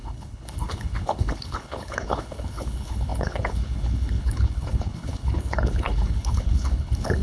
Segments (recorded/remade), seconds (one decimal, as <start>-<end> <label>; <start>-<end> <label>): 0.0-7.2 remade